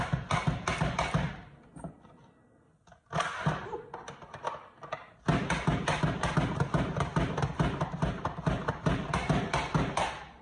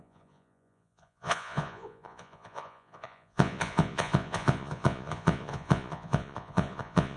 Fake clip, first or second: second